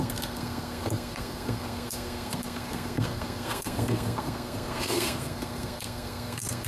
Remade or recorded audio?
remade